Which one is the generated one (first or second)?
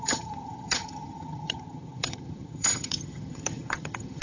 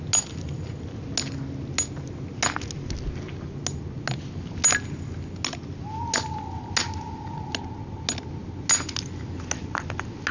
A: first